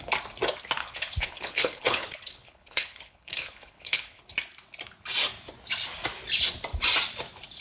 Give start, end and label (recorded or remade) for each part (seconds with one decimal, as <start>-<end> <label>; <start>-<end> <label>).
0.0-0.8 recorded; 0.8-4.2 remade; 4.2-7.6 recorded